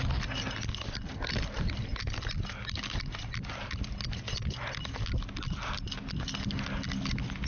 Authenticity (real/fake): real